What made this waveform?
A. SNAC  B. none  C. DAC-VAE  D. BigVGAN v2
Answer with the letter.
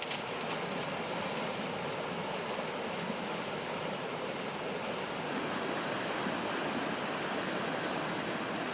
B